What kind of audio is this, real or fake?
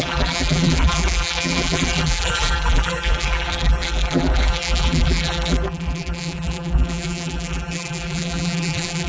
fake